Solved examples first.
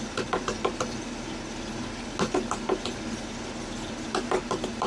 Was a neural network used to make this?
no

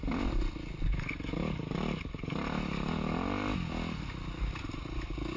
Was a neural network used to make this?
no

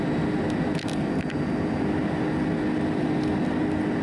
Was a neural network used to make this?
no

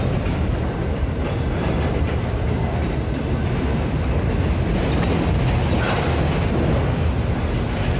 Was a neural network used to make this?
no